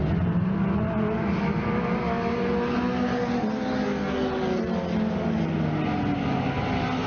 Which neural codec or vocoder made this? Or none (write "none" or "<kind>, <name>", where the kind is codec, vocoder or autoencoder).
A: none